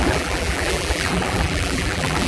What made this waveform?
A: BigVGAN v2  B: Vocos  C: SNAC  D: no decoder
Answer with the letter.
A